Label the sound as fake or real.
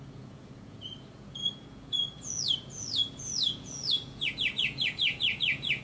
fake